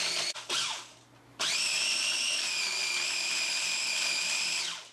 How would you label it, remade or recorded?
recorded